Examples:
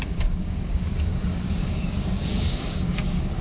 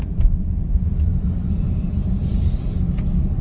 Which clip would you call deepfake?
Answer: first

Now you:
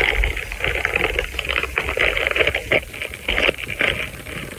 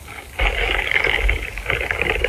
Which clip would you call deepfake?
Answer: second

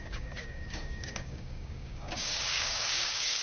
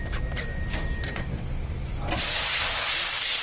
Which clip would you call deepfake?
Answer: first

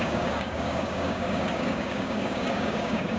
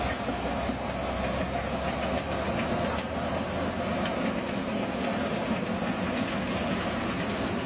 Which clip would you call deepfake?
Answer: first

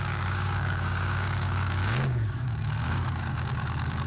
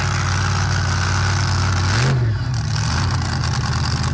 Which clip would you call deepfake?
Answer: first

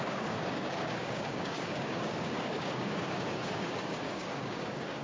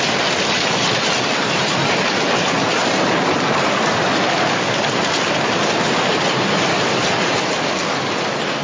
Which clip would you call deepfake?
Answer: first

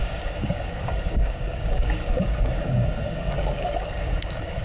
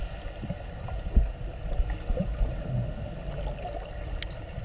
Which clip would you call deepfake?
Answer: first